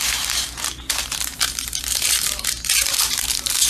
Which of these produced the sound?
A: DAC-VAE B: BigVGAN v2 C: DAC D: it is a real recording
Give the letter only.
B